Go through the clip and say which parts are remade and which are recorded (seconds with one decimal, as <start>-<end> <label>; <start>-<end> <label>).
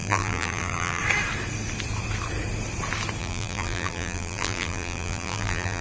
0.0-1.0 remade; 1.0-3.2 recorded; 3.2-5.8 remade